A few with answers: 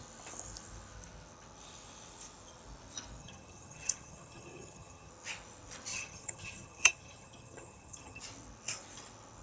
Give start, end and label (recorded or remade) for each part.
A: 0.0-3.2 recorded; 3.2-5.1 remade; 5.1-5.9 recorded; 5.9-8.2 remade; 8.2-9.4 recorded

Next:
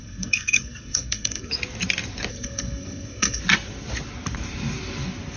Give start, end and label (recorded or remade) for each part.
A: 0.0-1.5 remade; 1.5-2.3 recorded; 2.3-3.4 remade; 3.4-5.4 recorded

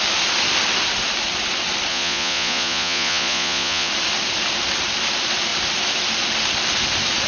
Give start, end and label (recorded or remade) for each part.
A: 0.0-1.9 recorded; 1.9-3.9 remade; 3.9-7.3 recorded